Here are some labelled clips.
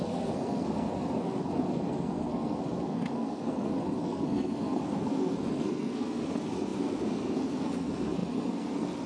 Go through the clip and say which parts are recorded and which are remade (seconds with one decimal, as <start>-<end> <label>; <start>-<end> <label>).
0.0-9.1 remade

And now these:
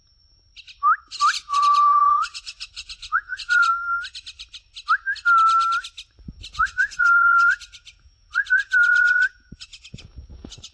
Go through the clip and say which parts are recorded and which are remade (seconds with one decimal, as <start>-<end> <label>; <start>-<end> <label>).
0.0-0.5 remade; 0.5-1.4 recorded; 1.4-3.7 remade; 3.7-6.5 recorded; 6.5-10.7 remade

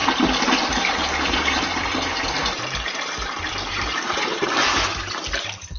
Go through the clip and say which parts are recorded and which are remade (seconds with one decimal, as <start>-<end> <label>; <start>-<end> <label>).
0.0-0.9 recorded; 0.9-5.8 remade

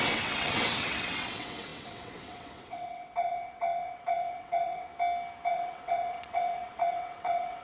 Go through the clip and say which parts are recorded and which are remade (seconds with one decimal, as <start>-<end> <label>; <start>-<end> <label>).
0.0-4.9 remade; 4.9-5.5 recorded; 5.5-7.6 remade

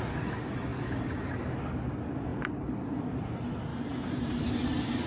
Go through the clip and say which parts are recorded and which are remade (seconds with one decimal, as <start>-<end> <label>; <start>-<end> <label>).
0.0-0.7 recorded; 0.7-1.6 remade; 1.6-3.7 recorded; 3.7-5.1 remade